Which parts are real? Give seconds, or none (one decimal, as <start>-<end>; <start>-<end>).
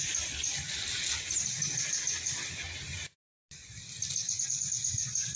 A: 0.0-5.4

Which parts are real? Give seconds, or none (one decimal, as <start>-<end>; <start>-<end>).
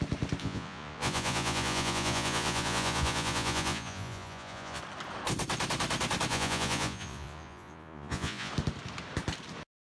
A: 0.0-0.4; 4.8-6.3; 8.5-10.0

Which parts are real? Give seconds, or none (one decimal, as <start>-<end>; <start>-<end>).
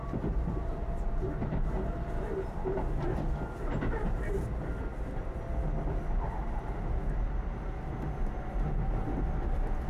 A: 0.8-9.9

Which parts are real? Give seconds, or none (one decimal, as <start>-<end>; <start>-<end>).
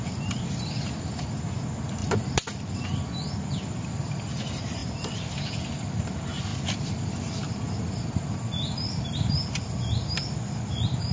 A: 0.0-2.0; 3.7-4.8; 6.1-6.5; 9.5-11.1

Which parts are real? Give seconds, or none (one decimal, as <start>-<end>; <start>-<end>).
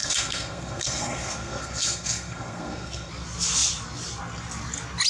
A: 3.1-5.1